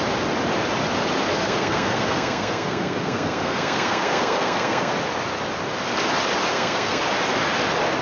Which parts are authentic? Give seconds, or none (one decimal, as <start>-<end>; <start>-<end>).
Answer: 0.0-1.3; 4.9-6.5; 7.0-8.0